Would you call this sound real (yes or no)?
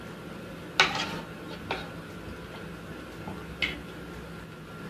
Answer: yes